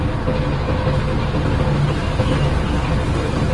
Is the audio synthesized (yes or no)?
no